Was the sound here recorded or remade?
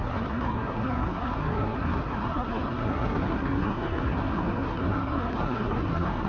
remade